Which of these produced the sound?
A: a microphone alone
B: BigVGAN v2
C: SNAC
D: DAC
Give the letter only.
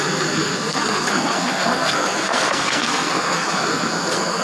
C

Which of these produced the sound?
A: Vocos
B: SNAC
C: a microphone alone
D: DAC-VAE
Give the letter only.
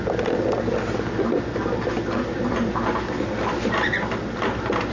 C